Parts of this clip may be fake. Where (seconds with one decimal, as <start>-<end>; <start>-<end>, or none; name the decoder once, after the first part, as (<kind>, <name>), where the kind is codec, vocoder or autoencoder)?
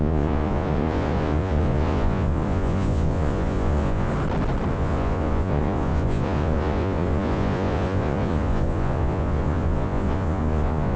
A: 0.0-4.1 (vocoder, Vocos); 4.7-11.0